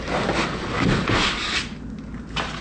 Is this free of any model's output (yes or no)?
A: yes